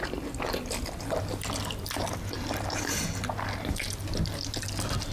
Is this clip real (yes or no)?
yes